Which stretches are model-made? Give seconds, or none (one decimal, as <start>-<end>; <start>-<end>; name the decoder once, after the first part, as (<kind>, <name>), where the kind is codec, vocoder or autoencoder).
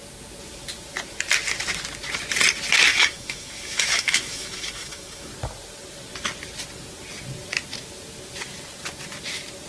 2.9-5.3 (autoencoder, DAC-VAE)